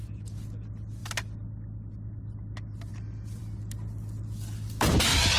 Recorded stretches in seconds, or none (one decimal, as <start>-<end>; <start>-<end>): 0.0-5.4